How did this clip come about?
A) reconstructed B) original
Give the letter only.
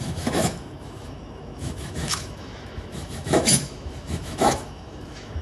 A